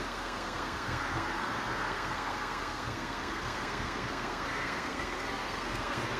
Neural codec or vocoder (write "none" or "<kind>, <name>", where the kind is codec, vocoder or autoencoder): codec, SNAC